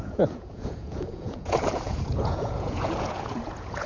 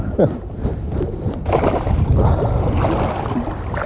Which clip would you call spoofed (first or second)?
first